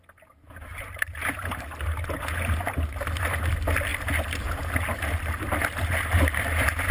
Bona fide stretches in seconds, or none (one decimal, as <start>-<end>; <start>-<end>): 0.0-0.7; 1.7-6.9